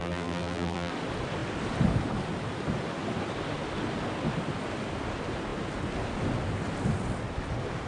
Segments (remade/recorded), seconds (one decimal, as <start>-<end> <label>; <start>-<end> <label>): 0.0-0.9 remade; 0.9-7.9 recorded